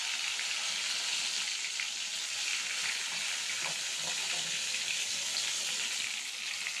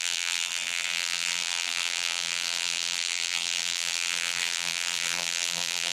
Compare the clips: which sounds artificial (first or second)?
second